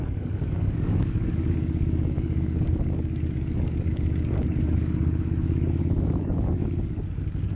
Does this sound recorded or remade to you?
remade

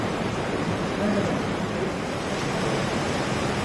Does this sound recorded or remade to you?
remade